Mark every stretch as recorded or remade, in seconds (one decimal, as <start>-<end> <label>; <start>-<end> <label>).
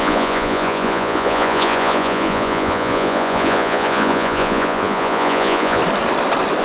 0.0-5.8 remade; 5.8-6.6 recorded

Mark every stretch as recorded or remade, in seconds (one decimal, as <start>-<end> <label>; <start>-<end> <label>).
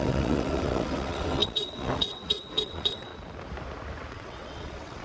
0.0-3.1 remade; 3.1-4.1 recorded; 4.1-5.0 remade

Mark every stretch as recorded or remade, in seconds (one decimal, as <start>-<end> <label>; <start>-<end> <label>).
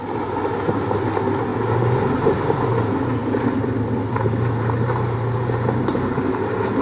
0.0-6.8 recorded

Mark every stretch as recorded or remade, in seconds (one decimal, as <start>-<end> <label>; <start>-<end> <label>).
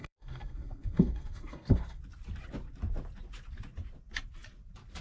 0.0-2.0 remade; 2.0-5.0 recorded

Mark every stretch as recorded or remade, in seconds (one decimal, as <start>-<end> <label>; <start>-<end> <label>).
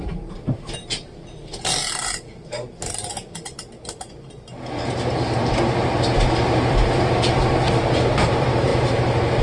0.0-3.1 remade; 3.1-4.1 recorded; 4.1-9.4 remade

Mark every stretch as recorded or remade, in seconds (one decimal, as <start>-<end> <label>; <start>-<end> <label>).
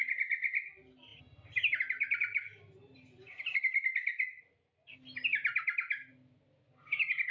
0.0-2.5 recorded; 2.5-3.5 remade; 3.5-7.3 recorded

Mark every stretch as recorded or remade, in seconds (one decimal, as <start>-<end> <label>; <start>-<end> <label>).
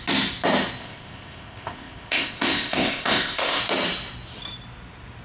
0.0-0.8 recorded; 0.8-3.6 remade; 3.6-5.2 recorded